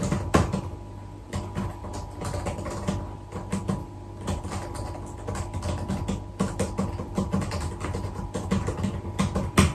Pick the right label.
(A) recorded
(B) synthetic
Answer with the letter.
A